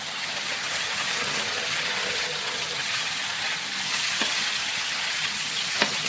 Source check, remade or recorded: remade